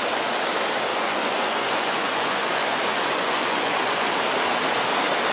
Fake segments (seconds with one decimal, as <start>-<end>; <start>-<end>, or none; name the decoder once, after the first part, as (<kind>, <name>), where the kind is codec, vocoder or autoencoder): 0.9-4.1 (vocoder, Vocos)